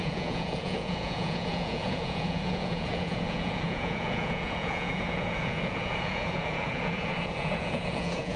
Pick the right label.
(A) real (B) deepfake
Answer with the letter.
B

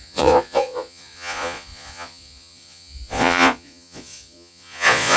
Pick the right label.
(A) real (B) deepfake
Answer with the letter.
B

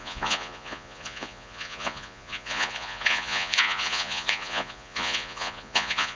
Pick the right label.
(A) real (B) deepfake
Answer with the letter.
B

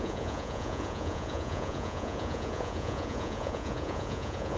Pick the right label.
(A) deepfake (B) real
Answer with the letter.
A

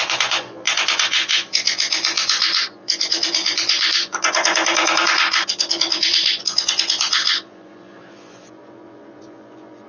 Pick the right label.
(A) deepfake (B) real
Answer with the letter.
A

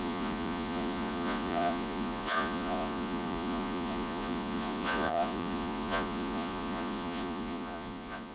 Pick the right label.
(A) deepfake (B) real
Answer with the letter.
A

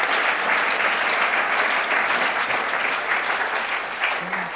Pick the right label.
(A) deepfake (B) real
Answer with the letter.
B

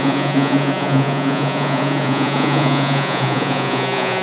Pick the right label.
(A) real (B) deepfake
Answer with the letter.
B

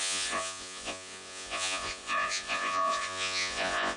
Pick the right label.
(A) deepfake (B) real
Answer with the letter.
A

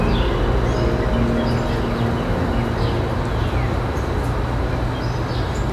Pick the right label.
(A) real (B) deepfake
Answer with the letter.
A